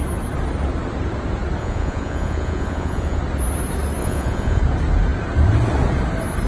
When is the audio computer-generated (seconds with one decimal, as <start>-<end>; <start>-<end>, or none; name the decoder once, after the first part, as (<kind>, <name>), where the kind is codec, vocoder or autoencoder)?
1.6-3.2 (vocoder, Vocos); 4.0-4.6